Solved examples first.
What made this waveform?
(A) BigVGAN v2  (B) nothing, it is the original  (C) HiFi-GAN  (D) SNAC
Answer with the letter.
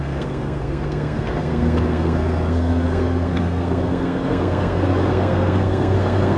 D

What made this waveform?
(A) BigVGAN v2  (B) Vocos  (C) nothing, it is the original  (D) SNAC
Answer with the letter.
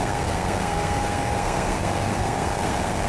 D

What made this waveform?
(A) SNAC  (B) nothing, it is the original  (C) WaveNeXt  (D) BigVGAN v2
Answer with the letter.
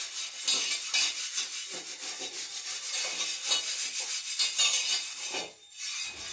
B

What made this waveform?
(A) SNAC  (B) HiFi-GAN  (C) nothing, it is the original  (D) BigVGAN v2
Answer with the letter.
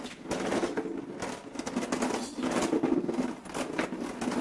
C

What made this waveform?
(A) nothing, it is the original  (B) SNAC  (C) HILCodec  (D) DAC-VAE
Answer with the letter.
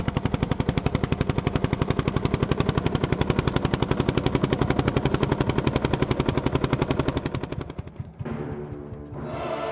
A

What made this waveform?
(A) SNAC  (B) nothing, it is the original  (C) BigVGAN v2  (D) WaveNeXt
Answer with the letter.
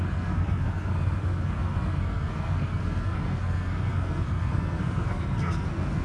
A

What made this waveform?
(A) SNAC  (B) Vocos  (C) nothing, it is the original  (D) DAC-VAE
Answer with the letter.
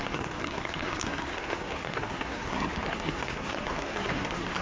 A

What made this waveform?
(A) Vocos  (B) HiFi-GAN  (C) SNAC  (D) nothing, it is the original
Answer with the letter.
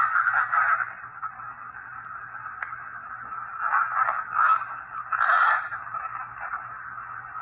D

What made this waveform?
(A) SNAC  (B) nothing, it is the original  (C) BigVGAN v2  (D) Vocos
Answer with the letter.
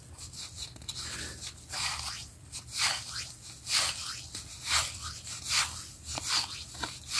B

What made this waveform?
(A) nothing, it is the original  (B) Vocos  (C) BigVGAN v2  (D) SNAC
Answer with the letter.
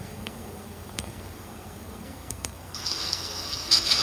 D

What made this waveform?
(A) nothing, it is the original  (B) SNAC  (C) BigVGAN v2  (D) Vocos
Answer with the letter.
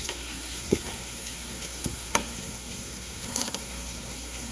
B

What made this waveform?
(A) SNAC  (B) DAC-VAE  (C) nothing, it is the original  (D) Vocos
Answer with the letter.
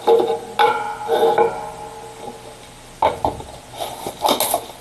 C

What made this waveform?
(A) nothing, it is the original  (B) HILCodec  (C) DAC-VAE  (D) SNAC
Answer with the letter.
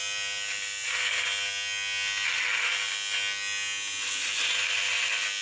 A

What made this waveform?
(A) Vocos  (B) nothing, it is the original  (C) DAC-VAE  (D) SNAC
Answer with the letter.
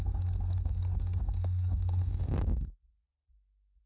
D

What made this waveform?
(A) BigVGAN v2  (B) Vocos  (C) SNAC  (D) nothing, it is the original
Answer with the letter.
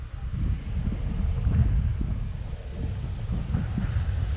D